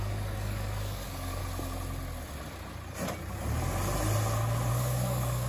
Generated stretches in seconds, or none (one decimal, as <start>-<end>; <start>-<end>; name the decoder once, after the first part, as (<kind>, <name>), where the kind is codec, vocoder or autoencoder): 0.0-1.4 (codec, DAC); 4.7-5.5